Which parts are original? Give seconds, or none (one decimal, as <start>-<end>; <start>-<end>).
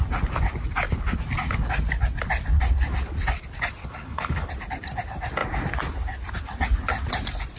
0.0-3.8; 4.5-7.6